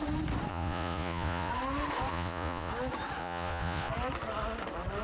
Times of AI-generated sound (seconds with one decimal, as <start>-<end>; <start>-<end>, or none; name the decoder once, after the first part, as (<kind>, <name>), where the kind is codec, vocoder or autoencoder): 0.5-1.5 (vocoder, Vocos); 2.1-2.7; 3.2-3.9